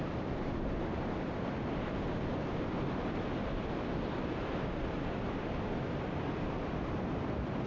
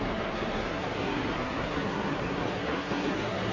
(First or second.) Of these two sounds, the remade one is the second